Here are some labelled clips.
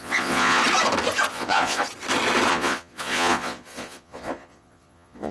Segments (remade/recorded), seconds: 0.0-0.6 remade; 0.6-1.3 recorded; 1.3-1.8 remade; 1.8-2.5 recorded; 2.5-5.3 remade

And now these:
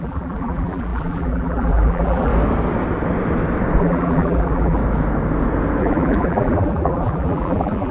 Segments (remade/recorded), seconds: 0.0-2.3 remade; 2.3-3.8 recorded; 3.8-4.8 remade; 4.8-5.8 recorded; 5.8-7.9 remade

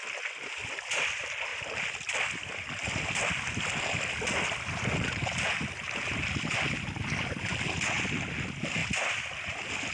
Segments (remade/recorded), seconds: 0.0-9.9 recorded

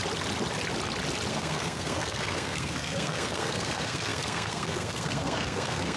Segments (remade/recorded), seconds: 0.0-1.3 recorded; 1.3-6.0 remade